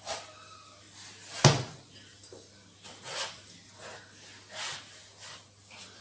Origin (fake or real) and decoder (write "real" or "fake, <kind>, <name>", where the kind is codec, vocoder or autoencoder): real